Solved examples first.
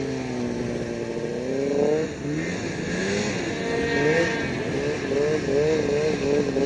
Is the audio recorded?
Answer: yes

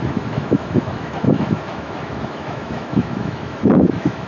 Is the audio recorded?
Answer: no